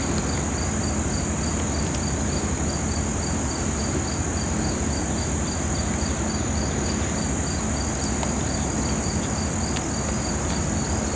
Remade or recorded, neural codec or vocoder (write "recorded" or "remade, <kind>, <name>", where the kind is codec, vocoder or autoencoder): recorded